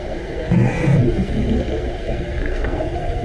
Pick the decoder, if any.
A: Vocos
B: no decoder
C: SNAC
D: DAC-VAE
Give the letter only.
C